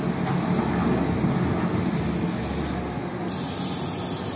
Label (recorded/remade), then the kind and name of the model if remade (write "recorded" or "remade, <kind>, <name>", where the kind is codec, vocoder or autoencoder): recorded